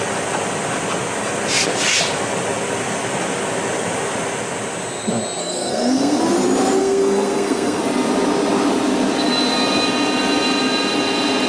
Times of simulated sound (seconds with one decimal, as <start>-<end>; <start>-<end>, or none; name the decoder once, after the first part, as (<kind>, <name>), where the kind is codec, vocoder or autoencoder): 5.4-6.2 (codec, SNAC); 6.8-7.8